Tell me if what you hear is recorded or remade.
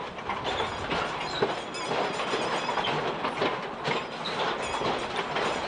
recorded